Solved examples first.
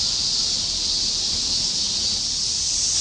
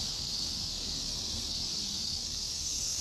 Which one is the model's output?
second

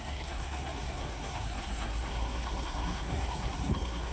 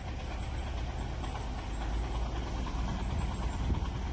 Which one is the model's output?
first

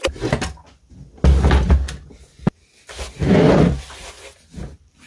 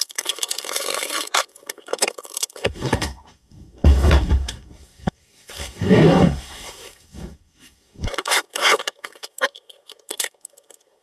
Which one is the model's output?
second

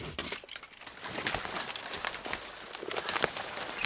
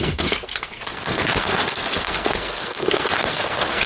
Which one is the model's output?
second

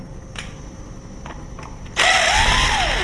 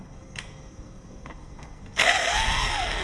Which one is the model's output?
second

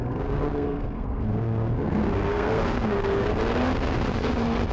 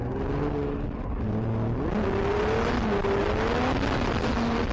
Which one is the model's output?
first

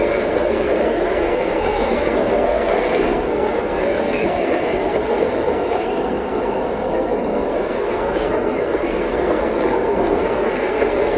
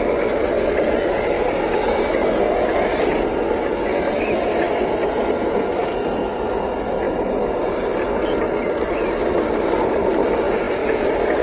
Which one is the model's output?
first